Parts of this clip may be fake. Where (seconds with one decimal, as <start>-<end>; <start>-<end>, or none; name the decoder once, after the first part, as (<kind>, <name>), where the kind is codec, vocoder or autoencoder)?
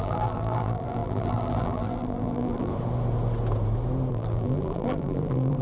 0.0-2.7 (vocoder, BigVGAN v2); 4.1-5.6